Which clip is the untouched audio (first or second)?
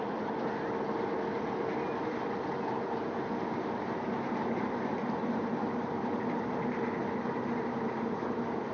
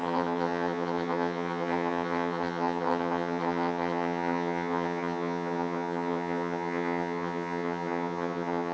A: first